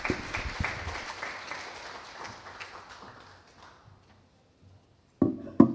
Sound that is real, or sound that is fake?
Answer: real